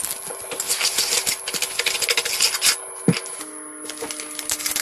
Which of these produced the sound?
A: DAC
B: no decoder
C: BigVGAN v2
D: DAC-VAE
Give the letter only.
B